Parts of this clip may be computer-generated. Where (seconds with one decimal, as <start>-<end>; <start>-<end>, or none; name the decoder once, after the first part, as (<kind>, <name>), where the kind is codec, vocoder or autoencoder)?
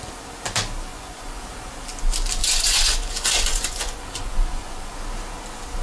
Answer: 0.9-1.4 (vocoder, Vocos); 2.4-5.0